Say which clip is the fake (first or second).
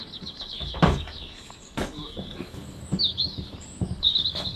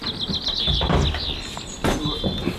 first